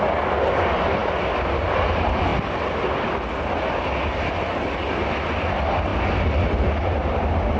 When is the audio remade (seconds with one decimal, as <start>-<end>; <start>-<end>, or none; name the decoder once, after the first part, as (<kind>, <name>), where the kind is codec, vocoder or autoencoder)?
none